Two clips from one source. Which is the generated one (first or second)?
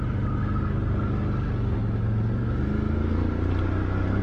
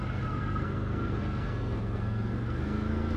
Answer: second